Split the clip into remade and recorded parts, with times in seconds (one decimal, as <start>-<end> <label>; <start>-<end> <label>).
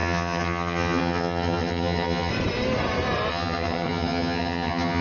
0.0-2.3 remade; 2.3-3.3 recorded; 3.3-5.0 remade